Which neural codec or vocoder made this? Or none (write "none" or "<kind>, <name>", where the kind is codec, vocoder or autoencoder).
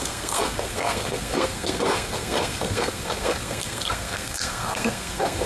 codec, SNAC